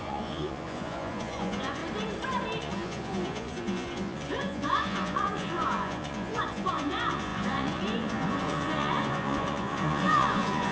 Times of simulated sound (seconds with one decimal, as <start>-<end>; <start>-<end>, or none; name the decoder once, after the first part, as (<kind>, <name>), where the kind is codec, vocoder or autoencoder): 0.0-1.8 (vocoder, Vocos); 2.6-10.7